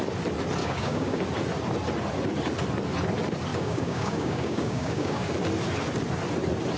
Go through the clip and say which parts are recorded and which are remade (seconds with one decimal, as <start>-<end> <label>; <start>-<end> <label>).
0.0-0.6 recorded; 0.6-1.2 remade; 1.2-3.5 recorded; 3.5-5.3 remade; 5.3-6.8 recorded